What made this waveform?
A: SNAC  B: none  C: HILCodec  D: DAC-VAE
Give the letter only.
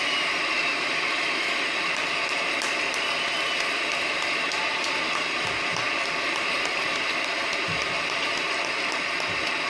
B